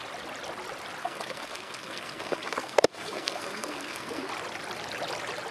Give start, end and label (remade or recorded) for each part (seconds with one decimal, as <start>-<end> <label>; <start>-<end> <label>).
0.0-1.0 recorded; 1.0-4.3 remade; 4.3-5.5 recorded